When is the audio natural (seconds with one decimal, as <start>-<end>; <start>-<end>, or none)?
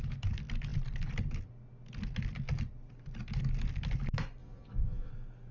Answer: 0.0-4.4; 5.1-5.5